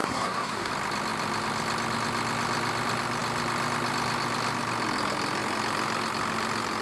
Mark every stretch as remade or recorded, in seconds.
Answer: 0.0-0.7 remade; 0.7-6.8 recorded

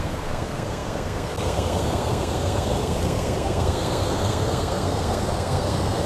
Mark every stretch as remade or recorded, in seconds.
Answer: 0.0-6.1 remade

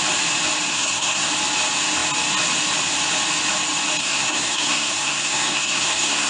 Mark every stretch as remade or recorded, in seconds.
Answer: 0.0-0.7 recorded; 0.7-1.3 remade; 1.3-4.0 recorded; 4.0-6.3 remade

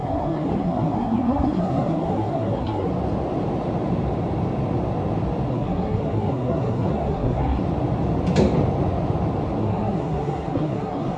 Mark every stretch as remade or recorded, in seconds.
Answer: 0.0-2.9 remade; 2.9-5.5 recorded; 5.5-7.6 remade; 7.6-9.6 recorded; 9.6-11.2 remade

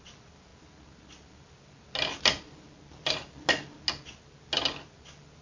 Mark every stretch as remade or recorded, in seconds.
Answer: 0.0-5.4 recorded

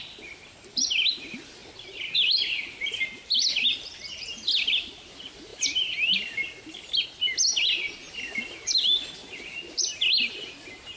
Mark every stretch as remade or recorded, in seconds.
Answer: 0.0-11.0 recorded

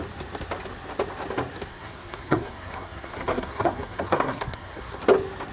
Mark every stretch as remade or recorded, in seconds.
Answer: 0.0-1.7 recorded; 1.7-5.0 remade; 5.0-5.5 recorded

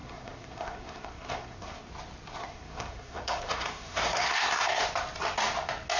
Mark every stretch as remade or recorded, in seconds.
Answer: 0.0-1.9 remade; 1.9-2.4 recorded; 2.4-4.8 remade; 4.8-6.0 recorded